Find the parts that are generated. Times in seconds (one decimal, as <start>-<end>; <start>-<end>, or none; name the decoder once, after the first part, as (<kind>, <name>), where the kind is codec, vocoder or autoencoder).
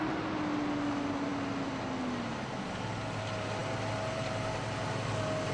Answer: none